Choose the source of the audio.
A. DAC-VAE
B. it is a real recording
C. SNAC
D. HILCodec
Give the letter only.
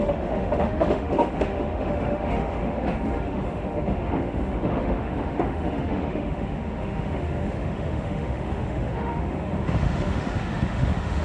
A